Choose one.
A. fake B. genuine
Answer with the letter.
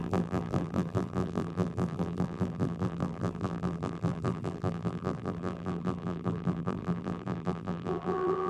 A